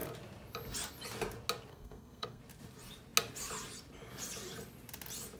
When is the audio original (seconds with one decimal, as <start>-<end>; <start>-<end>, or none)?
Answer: 0.0-1.7; 2.4-5.4